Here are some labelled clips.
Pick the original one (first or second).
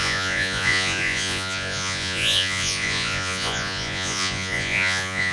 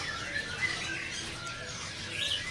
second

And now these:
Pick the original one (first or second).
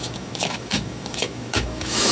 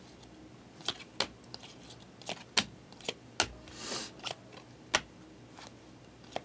second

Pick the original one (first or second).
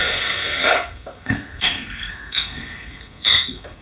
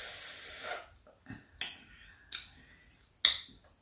second